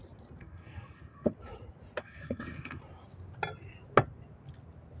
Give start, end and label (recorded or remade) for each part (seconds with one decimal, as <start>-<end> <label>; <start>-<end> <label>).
0.0-0.4 recorded; 0.4-1.3 remade; 1.3-2.0 recorded; 2.0-2.8 remade; 2.8-5.0 recorded